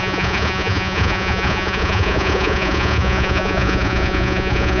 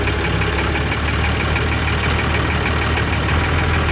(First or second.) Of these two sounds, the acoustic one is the second